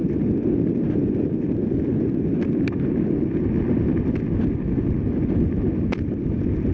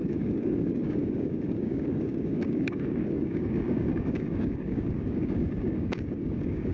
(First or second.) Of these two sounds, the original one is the first